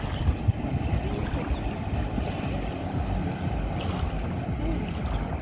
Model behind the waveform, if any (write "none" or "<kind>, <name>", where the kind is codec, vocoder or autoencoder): none